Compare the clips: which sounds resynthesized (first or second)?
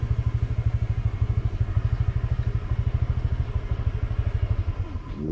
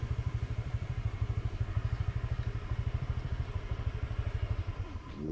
second